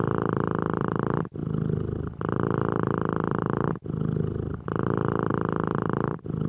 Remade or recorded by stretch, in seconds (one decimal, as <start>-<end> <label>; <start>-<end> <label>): 0.0-6.5 recorded